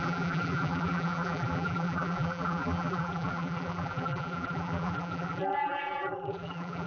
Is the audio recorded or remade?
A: remade